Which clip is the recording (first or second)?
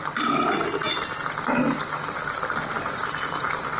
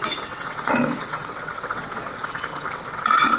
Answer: first